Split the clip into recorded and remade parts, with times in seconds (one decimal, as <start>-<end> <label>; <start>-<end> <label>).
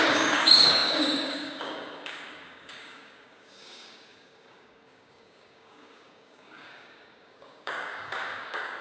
0.0-8.8 remade